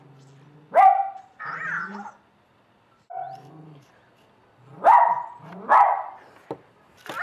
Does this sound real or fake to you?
real